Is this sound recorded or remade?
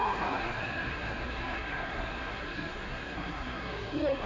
remade